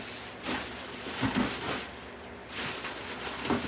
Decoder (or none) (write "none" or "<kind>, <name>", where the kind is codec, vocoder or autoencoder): none